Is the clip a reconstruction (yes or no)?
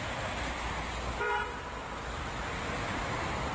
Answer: yes